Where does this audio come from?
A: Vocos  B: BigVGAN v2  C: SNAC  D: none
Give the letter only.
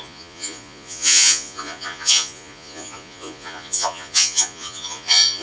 A